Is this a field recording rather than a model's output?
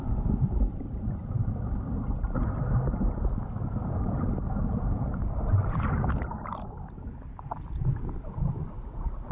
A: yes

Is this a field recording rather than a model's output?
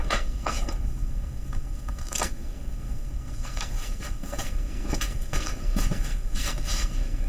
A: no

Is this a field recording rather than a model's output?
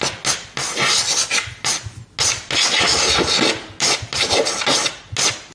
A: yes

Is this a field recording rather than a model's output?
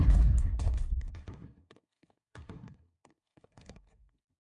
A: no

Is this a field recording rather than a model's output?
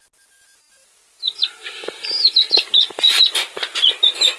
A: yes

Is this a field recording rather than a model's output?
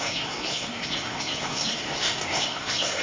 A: no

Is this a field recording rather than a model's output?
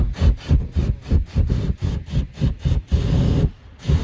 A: yes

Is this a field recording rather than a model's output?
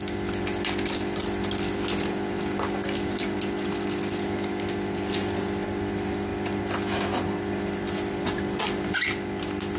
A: yes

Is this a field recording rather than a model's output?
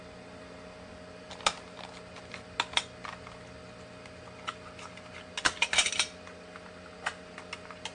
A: yes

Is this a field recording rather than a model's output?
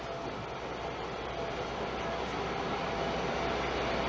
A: yes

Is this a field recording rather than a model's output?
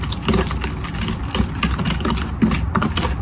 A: yes